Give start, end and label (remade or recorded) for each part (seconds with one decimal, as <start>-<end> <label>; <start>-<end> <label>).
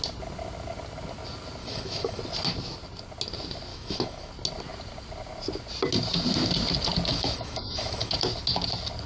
0.0-1.6 recorded; 1.6-2.2 remade; 2.2-3.7 recorded; 3.7-4.3 remade; 4.3-7.1 recorded; 7.1-8.1 remade; 8.1-9.1 recorded